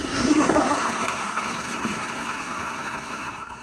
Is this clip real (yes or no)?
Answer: no